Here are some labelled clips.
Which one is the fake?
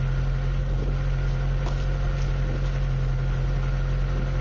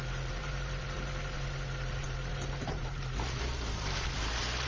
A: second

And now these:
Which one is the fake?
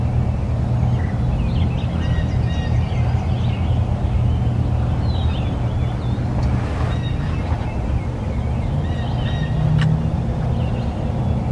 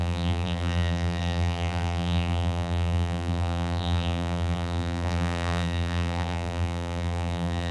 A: second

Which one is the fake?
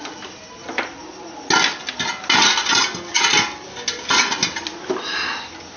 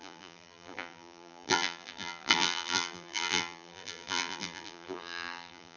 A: second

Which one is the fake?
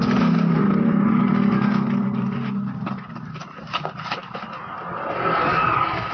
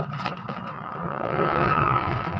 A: second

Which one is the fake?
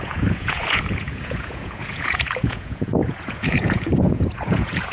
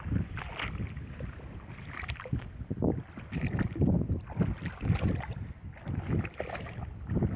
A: first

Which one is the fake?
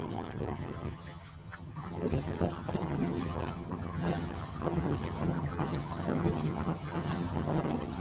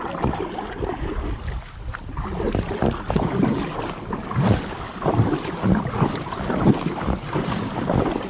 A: first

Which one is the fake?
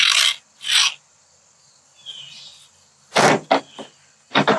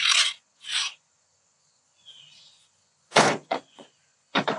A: second